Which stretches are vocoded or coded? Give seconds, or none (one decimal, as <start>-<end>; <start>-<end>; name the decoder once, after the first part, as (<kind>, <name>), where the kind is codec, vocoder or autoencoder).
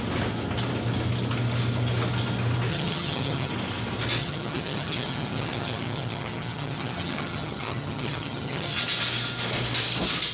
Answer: 2.7-3.5 (vocoder, HiFi-GAN); 4.2-8.8